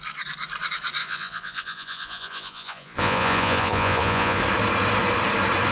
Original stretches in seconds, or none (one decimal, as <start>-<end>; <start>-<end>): 0.0-1.0; 4.4-5.7